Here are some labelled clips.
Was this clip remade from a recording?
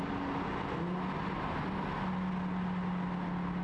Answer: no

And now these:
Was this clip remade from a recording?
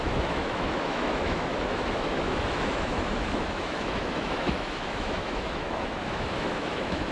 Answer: yes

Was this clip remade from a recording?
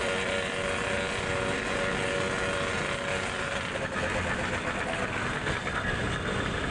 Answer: no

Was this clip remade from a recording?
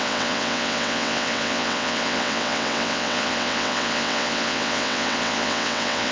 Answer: yes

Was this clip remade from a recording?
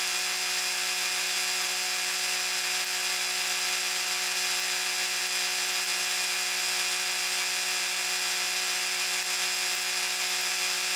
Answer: no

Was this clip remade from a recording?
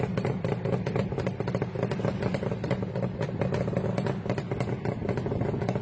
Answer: no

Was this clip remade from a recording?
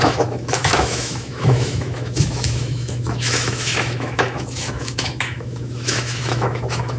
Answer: yes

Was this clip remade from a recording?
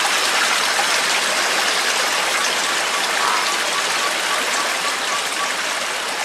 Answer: no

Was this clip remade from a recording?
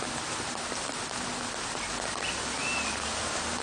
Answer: no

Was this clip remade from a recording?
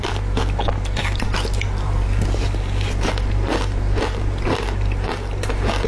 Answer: no